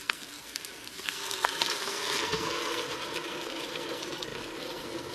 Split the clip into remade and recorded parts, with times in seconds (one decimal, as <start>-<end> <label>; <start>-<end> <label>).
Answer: 0.0-5.1 remade